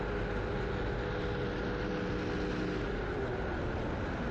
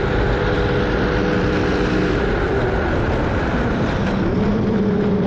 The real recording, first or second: first